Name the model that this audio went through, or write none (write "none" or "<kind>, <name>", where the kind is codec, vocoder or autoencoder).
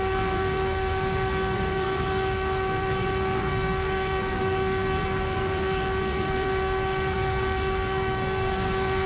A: codec, SNAC